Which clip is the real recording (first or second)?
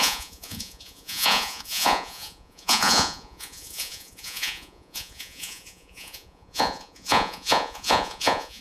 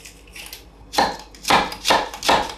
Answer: second